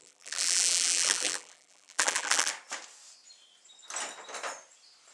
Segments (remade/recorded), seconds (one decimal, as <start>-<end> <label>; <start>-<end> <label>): 0.0-2.5 remade; 2.5-5.1 recorded